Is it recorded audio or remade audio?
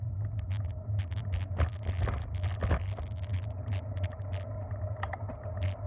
recorded